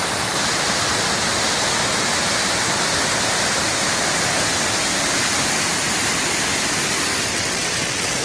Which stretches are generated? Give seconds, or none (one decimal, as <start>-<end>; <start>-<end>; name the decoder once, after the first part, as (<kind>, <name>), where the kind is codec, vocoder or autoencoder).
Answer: 7.3-8.2 (vocoder, WaveNeXt)